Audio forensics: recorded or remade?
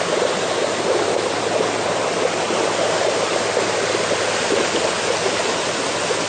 recorded